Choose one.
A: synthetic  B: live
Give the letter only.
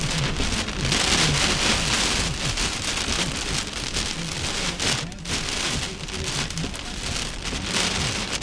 B